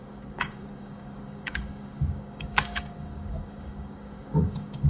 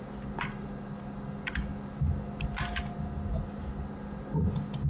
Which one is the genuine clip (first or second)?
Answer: second